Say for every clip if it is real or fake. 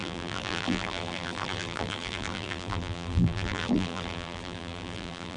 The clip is fake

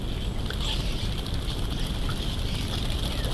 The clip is real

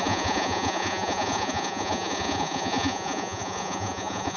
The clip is fake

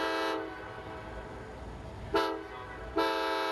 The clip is real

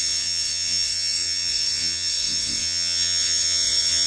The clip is fake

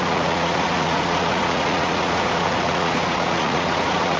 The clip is fake